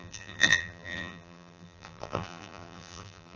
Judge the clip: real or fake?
fake